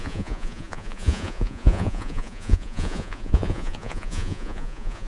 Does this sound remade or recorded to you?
remade